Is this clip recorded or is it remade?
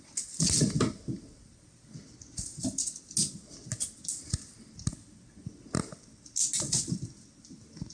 recorded